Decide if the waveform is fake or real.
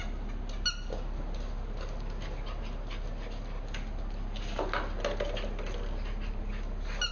real